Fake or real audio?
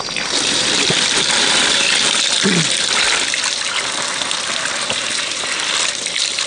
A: real